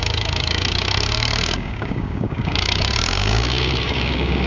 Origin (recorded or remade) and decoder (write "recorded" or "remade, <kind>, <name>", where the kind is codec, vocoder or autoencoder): remade, codec, DAC